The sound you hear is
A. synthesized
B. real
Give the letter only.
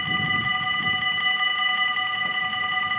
B